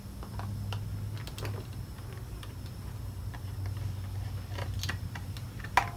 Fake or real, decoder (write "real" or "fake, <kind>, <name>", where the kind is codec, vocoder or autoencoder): real